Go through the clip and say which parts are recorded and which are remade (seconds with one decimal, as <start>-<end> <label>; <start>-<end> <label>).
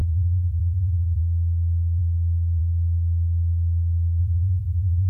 0.0-1.2 remade; 1.2-4.2 recorded; 4.2-5.1 remade